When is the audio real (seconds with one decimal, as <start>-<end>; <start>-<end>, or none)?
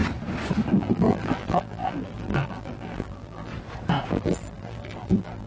0.0-0.7; 3.5-4.1